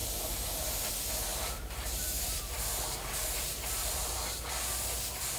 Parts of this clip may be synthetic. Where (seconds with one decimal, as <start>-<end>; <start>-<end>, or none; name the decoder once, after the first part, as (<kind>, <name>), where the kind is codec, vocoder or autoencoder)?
0.0-0.9 (vocoder, BigVGAN v2); 1.3-4.5